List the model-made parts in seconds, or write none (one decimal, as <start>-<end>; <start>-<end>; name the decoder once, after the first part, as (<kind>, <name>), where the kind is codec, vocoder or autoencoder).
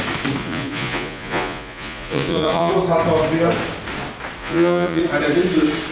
0.4-2.7 (vocoder, Vocos); 4.4-5.0